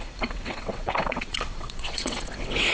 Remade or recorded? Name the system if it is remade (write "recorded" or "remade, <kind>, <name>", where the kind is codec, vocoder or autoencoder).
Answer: remade, vocoder, WaveNeXt